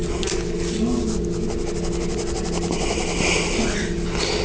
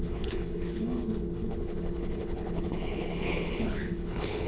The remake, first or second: second